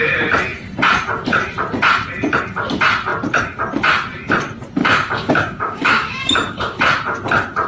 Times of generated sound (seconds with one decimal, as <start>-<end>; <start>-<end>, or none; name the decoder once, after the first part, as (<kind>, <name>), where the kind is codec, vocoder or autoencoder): 4.8-6.8 (codec, DAC)